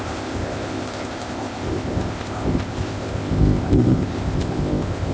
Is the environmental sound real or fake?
fake